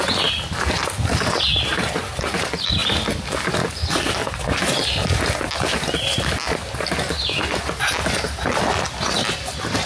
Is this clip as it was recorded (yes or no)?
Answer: yes